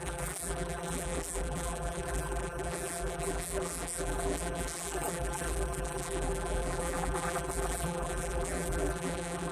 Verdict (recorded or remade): remade